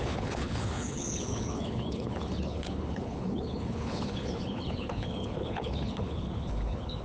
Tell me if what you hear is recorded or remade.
remade